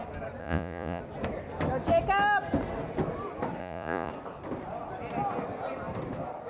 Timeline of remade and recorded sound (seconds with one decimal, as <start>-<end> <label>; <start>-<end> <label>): 0.0-0.4 recorded; 0.4-1.0 remade; 1.0-3.6 recorded; 3.6-4.1 remade; 4.1-6.5 recorded